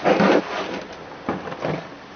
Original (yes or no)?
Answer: yes